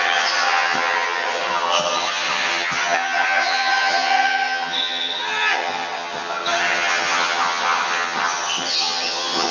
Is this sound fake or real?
fake